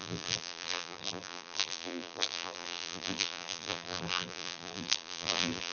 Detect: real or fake fake